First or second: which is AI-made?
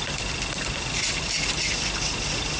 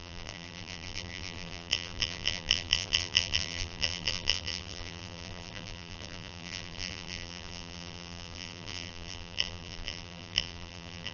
second